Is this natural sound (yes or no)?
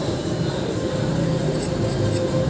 yes